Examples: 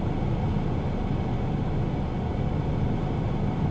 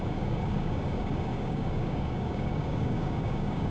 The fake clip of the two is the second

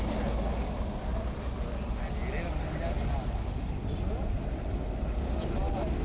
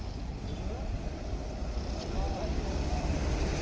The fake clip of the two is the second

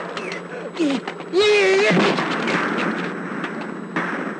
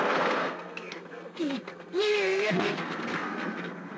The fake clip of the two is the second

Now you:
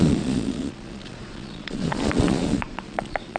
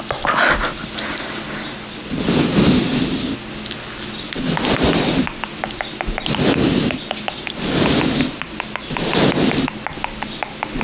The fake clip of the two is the first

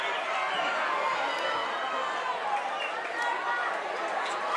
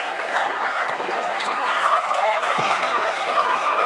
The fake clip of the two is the second